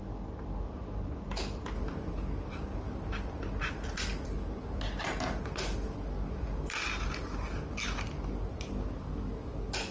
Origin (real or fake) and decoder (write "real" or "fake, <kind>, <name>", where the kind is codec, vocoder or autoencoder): real